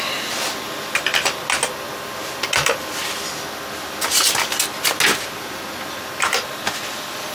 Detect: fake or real real